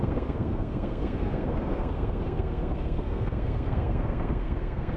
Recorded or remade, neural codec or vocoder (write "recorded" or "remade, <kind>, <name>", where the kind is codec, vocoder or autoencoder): remade, codec, SNAC